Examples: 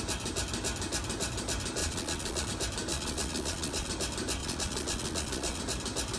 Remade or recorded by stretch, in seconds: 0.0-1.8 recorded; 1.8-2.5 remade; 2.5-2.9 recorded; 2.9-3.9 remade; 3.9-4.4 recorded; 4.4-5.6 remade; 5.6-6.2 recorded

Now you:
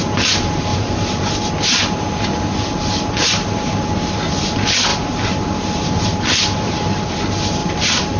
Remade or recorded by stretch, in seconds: 0.0-0.7 recorded; 0.7-1.3 remade; 1.3-4.9 recorded; 4.9-7.1 remade; 7.1-7.6 recorded; 7.6-8.2 remade

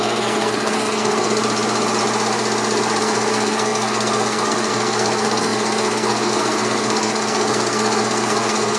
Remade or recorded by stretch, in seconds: 0.0-1.4 remade; 1.4-3.0 recorded; 3.0-8.8 remade

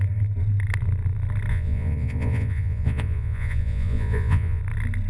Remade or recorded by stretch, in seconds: 0.0-1.5 recorded; 1.5-4.6 remade; 4.6-5.1 recorded

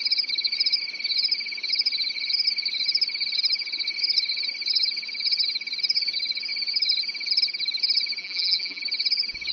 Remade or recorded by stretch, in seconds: 0.0-8.2 recorded; 8.2-8.8 remade; 8.8-9.5 recorded